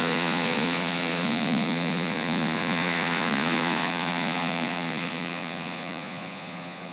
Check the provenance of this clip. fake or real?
fake